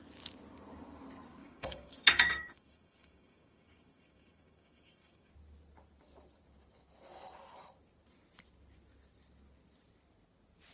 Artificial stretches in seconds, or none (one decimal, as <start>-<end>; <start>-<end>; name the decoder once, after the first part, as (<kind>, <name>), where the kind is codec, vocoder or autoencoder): 1.4-5.3 (codec, DAC)

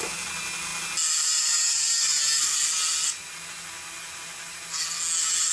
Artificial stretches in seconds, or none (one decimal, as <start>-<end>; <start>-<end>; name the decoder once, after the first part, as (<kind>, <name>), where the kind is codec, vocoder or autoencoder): none